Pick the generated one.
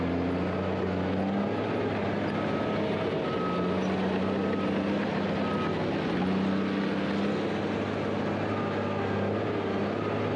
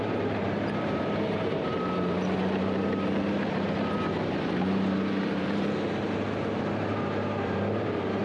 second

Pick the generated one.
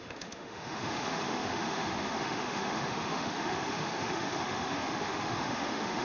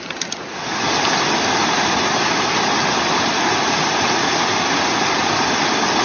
first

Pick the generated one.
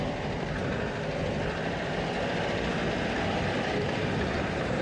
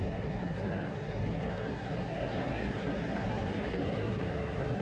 second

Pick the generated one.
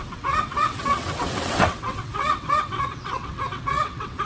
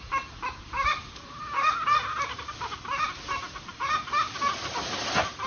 first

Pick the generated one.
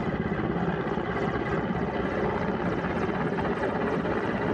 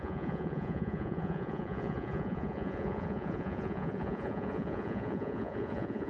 second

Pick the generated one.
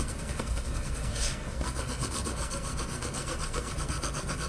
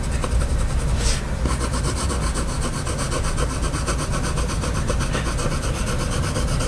first